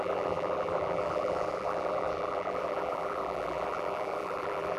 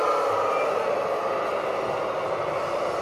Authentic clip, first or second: second